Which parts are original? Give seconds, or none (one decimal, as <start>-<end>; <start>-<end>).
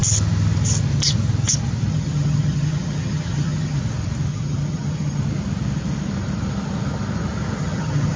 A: 0.0-1.9; 3.8-4.3; 5.2-7.6